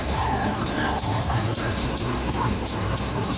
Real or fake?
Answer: fake